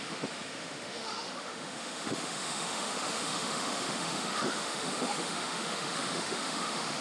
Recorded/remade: remade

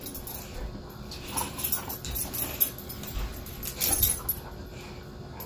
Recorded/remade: recorded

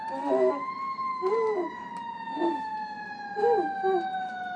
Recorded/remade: recorded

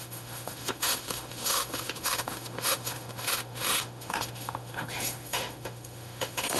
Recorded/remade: remade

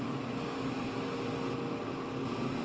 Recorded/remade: recorded